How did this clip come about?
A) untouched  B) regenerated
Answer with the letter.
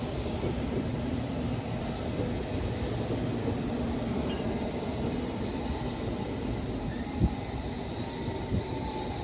A